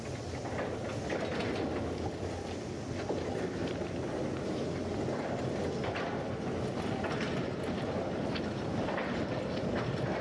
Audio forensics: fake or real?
real